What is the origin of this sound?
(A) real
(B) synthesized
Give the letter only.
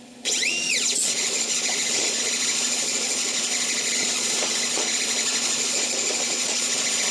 B